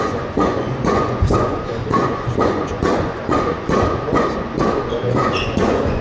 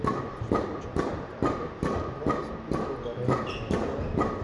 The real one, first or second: second